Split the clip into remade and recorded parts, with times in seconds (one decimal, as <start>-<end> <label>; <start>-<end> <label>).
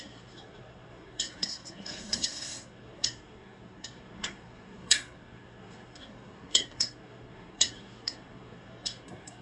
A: 0.0-9.4 remade